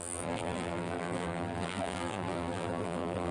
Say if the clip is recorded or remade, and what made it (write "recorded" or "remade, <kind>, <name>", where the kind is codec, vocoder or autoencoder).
remade, vocoder, BigVGAN v2